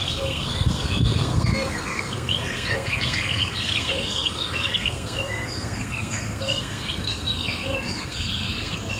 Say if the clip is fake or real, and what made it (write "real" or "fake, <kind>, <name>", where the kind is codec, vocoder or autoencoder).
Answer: fake, codec, SNAC